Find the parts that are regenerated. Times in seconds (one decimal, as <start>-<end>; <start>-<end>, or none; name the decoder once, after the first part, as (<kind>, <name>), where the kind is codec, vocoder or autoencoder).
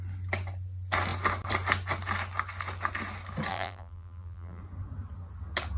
3.5-4.6 (vocoder, BigVGAN v2)